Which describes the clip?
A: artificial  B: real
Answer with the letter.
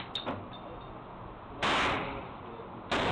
B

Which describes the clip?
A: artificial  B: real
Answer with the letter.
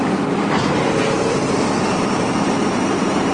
A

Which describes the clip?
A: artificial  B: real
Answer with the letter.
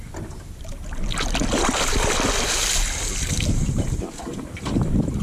B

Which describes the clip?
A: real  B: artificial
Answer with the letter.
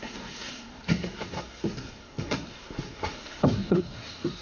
B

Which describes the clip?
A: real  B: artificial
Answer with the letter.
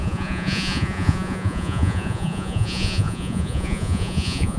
B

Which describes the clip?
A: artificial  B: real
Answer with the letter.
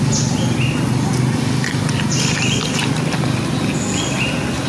B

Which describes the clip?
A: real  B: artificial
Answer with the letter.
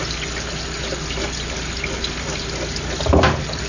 A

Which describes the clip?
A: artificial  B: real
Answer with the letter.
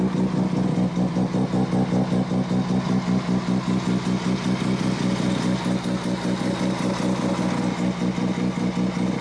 B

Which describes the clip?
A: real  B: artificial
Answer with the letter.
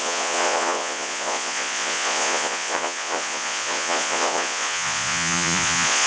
B